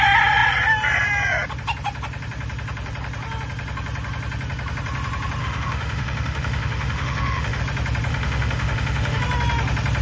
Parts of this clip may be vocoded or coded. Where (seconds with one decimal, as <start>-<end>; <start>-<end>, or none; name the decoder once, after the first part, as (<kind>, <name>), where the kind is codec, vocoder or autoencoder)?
5.4-7.6 (autoencoder, DAC-VAE); 8.1-9.2